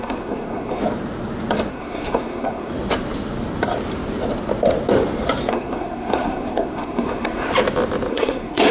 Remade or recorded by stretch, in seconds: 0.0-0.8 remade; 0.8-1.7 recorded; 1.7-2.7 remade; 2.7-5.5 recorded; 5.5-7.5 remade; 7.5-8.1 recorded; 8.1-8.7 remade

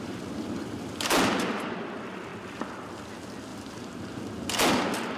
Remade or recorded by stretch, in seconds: 0.0-3.5 recorded; 3.5-4.2 remade; 4.2-5.2 recorded

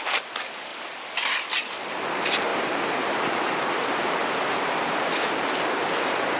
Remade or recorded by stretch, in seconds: 0.0-6.4 recorded

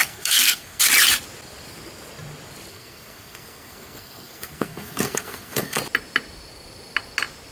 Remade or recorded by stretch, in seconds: 0.0-0.8 remade; 0.8-2.7 recorded; 2.7-5.8 remade; 5.8-7.5 recorded

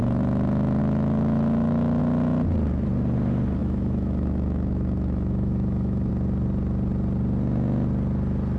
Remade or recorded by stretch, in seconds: 0.0-0.8 recorded; 0.8-2.0 remade; 2.0-3.6 recorded; 3.6-6.1 remade; 6.1-8.6 recorded

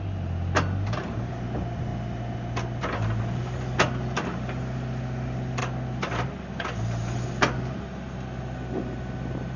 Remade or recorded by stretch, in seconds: 0.0-9.6 recorded

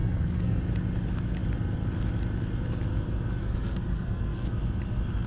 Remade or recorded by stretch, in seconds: 0.0-0.6 remade; 0.6-3.4 recorded; 3.4-4.5 remade; 4.5-5.3 recorded